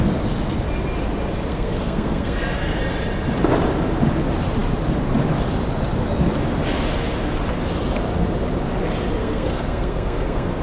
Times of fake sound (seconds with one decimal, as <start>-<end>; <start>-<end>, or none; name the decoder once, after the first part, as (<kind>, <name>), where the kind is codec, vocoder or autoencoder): 1.5-2.8 (codec, SNAC); 9.2-10.6